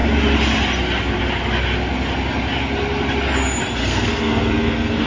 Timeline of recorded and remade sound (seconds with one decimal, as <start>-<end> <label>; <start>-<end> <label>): 0.0-3.8 recorded; 3.8-5.1 remade